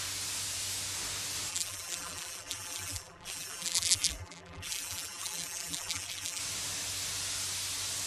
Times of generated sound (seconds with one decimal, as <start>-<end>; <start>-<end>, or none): 1.5-6.4